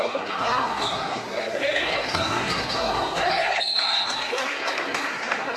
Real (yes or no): no